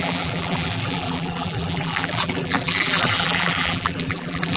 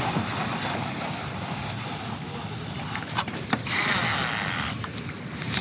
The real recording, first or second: second